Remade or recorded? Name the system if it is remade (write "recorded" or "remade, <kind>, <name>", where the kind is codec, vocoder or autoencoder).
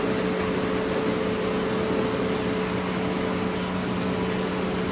recorded